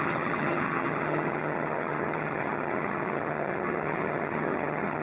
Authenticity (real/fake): fake